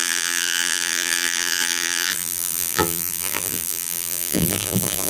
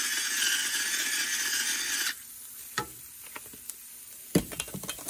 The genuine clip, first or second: second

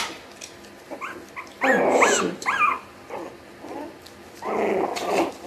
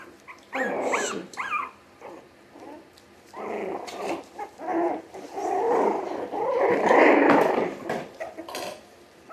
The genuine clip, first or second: first